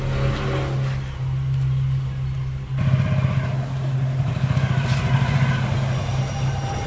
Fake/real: real